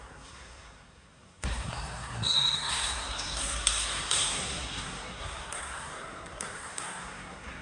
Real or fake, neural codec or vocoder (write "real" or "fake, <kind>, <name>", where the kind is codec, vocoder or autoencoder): fake, codec, SNAC